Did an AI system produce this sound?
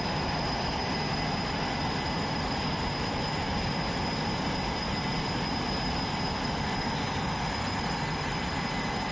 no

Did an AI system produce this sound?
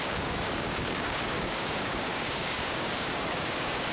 yes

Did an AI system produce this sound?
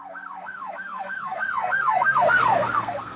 yes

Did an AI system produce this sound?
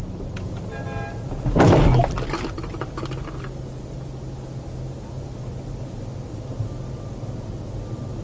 no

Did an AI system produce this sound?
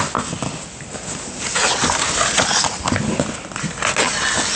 no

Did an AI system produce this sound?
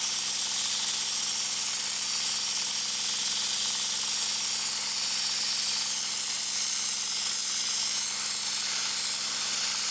no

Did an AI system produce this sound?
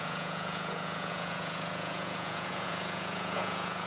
yes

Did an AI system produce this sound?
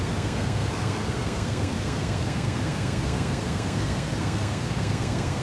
yes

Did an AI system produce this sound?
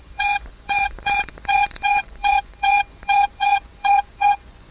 yes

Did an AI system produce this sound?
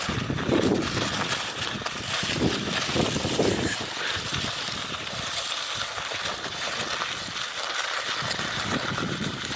no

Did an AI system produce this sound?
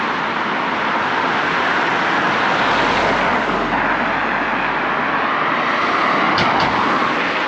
no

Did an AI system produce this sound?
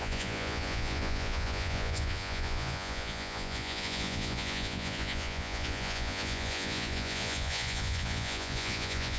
yes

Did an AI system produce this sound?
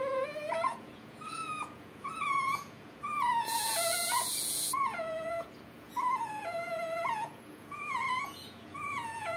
yes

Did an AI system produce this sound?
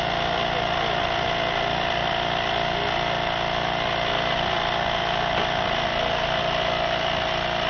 no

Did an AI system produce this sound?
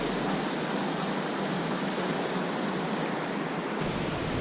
no